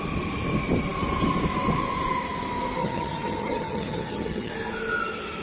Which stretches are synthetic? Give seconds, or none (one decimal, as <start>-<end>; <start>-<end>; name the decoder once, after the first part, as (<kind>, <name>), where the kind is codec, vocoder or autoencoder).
2.8-4.5 (vocoder, HiFi-GAN)